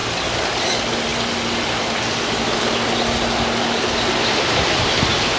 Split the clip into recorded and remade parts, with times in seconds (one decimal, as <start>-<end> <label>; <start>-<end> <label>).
0.0-5.4 recorded